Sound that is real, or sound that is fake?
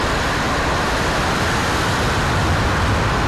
real